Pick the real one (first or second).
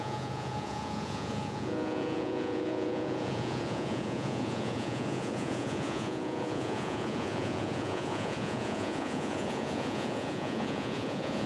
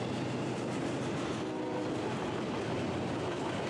second